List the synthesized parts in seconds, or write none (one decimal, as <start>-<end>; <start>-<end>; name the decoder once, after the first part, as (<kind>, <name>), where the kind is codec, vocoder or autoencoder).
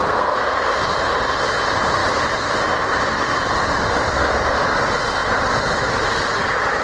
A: 0.0-0.6 (codec, SNAC)